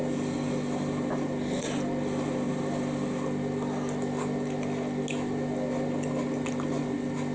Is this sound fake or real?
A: real